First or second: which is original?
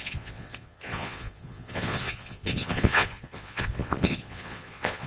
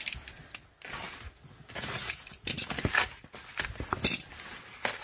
second